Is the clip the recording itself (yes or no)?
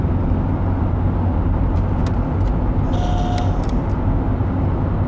yes